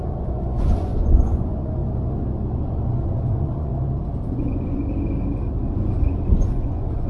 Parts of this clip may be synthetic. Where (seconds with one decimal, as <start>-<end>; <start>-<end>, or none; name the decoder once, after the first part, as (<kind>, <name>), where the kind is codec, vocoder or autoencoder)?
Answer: 0.0-1.8 (vocoder, Vocos); 2.5-3.7; 4.3-4.8; 5.6-7.1